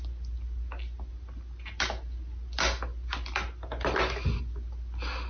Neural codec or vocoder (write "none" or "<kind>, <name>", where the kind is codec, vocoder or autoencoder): none